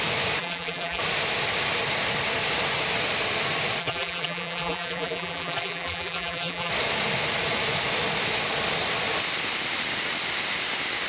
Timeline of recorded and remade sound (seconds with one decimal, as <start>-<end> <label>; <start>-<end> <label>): 0.0-0.4 recorded; 0.4-1.0 remade; 1.0-3.8 recorded; 3.8-6.7 remade; 6.7-11.1 recorded